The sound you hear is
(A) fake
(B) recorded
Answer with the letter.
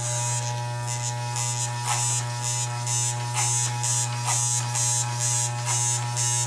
B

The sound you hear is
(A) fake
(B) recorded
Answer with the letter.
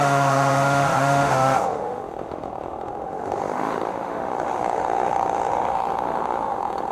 A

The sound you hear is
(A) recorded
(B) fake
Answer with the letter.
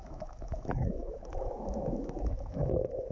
B